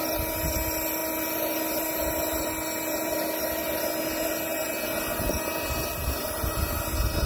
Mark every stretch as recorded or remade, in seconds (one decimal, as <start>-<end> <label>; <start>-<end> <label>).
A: 0.0-7.3 recorded